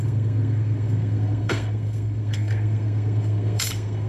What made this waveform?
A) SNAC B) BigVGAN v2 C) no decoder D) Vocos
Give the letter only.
A